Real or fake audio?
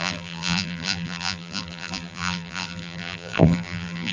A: fake